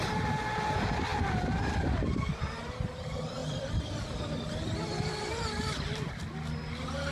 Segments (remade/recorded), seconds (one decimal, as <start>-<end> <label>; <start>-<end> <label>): 0.0-3.4 recorded; 3.4-5.6 remade; 5.6-7.1 recorded